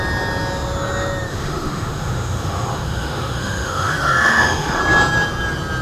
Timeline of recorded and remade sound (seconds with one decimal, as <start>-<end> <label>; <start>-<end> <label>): 0.0-1.3 recorded; 1.3-4.8 remade; 4.8-5.8 recorded